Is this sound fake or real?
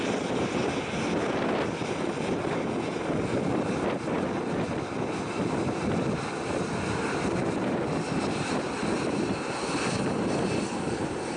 fake